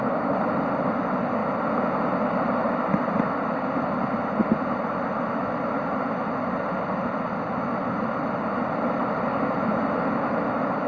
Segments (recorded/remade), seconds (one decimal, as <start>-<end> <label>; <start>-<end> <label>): 0.0-10.9 recorded